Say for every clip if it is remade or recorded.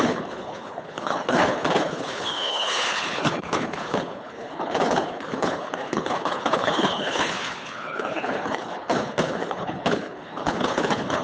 remade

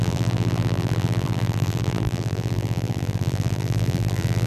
remade